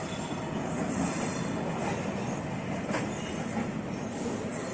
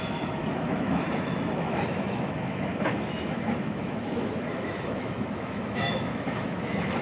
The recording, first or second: first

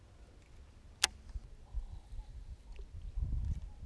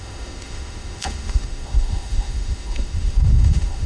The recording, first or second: first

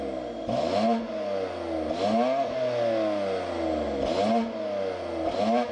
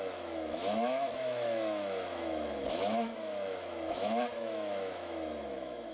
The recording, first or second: first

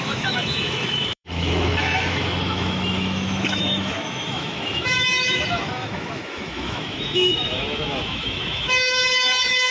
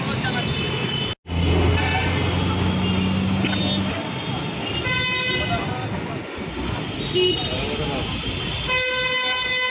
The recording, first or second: second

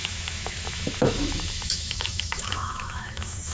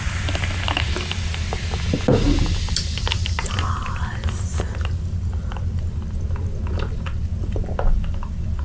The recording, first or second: second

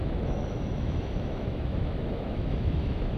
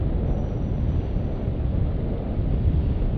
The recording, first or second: second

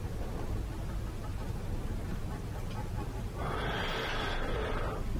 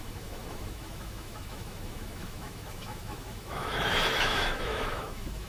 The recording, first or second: first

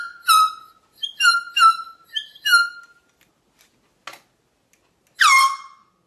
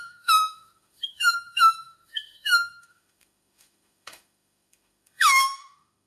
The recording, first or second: first